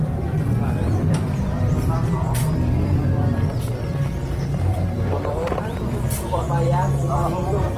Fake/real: fake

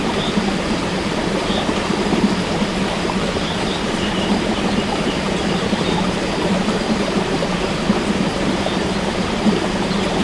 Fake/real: fake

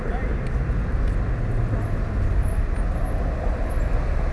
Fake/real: real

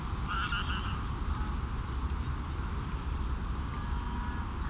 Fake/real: real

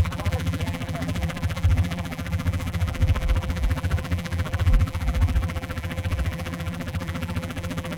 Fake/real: fake